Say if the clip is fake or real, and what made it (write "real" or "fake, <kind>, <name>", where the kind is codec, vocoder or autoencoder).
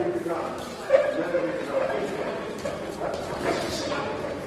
real